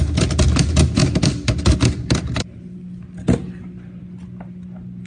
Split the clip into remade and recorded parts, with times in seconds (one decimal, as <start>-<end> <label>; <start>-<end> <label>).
0.0-5.1 recorded